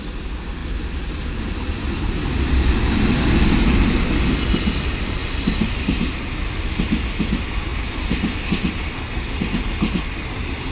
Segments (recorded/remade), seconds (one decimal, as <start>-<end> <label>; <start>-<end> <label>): 0.0-10.7 recorded